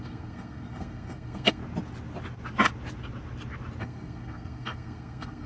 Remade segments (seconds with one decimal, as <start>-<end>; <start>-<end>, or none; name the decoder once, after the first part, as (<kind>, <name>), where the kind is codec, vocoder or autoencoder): 0.0-1.6 (codec, SNAC); 3.8-5.5